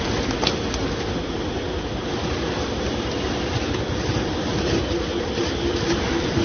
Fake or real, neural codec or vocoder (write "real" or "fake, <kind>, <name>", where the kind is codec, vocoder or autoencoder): real